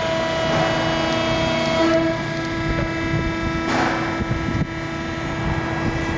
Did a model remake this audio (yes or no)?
no